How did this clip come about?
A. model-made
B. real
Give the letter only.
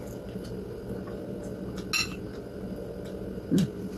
B